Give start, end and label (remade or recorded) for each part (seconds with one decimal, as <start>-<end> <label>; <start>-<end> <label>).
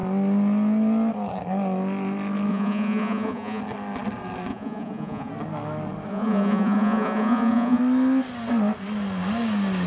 0.0-2.5 recorded; 2.5-3.6 remade; 3.6-4.5 recorded; 4.5-5.3 remade; 5.3-6.1 recorded; 6.1-7.8 remade; 7.8-9.9 recorded